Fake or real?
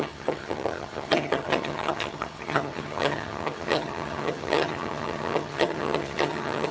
fake